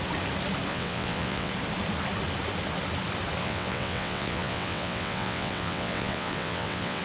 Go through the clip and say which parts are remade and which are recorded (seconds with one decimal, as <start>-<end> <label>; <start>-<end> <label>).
0.0-0.7 recorded; 0.7-1.5 remade; 1.5-3.4 recorded; 3.4-7.0 remade